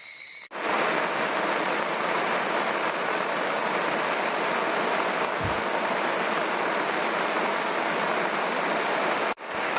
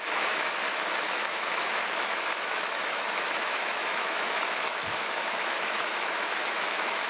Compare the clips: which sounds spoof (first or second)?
second